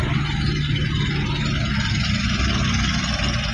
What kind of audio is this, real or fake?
real